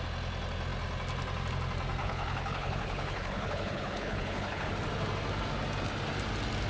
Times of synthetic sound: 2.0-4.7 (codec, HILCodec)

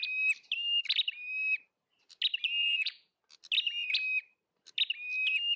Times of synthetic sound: 2.6-3.2 (vocoder, Vocos)

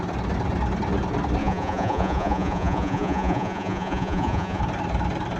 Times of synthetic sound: 1.4-4.6 (vocoder, Vocos)

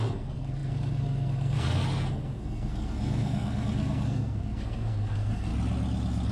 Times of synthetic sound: 0.0-5.5 (codec, SNAC)

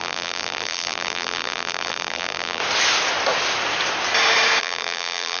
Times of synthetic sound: 0.0-2.6 (vocoder, BigVGAN v2); 4.6-5.4

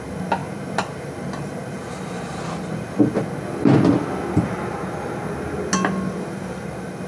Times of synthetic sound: none